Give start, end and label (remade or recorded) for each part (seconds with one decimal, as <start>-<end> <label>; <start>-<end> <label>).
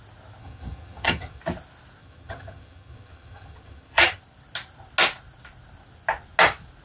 0.0-0.4 recorded; 0.4-1.4 remade; 1.4-2.0 recorded; 2.0-4.2 remade; 4.2-6.8 recorded